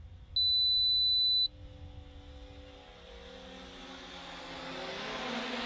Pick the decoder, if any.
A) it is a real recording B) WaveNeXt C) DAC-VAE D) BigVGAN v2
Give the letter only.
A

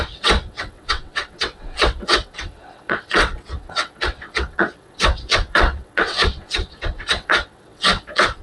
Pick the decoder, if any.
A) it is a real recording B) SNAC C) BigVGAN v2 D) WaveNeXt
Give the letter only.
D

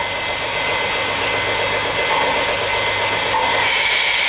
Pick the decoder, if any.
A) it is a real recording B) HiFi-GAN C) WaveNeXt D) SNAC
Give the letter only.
A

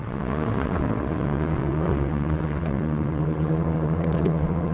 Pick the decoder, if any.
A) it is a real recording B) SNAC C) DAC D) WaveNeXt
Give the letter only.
D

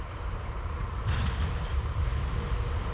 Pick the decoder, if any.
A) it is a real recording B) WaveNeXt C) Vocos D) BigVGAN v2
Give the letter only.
A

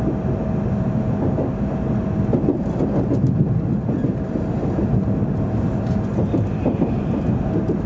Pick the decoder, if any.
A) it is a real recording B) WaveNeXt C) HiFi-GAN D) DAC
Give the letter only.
A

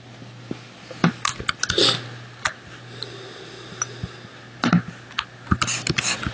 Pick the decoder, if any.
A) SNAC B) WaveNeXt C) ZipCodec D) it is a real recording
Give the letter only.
D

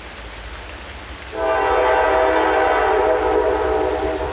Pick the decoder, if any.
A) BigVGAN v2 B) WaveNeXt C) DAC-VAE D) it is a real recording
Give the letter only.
D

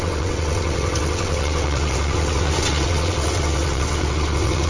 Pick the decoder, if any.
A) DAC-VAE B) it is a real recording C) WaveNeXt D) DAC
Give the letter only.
C